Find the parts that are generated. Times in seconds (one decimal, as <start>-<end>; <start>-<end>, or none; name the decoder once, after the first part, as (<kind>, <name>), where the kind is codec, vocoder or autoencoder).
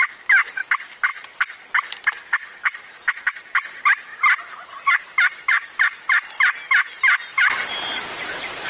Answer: none